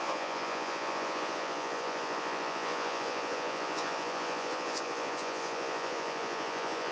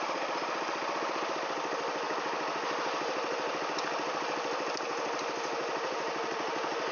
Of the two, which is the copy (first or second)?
first